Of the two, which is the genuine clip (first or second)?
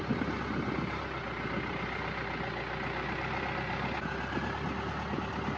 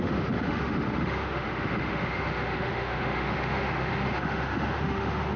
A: first